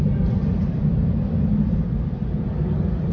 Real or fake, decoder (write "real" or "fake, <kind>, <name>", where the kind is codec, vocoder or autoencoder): real